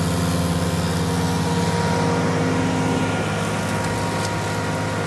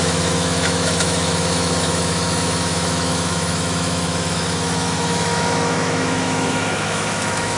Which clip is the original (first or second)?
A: first